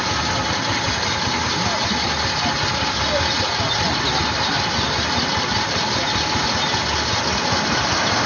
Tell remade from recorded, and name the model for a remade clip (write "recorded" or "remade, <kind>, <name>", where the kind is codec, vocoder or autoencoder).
recorded